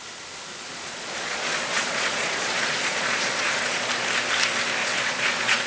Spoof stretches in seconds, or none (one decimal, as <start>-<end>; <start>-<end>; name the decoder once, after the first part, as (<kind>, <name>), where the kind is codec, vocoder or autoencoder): 0.5-3.9 (vocoder, Vocos); 4.8-5.7